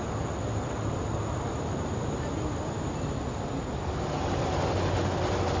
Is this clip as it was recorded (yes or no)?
yes